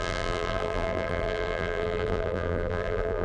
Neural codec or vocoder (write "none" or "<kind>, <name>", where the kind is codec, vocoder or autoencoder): vocoder, BigVGAN v2